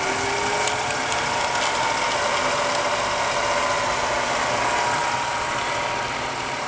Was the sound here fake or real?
real